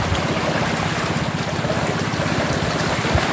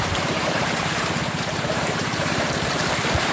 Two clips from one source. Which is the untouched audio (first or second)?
first